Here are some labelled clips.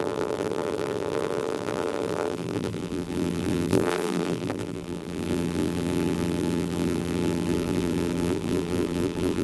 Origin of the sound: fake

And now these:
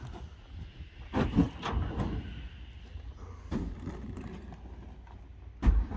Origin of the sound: real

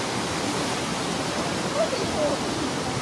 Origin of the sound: real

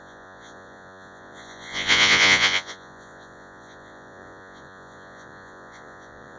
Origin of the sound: fake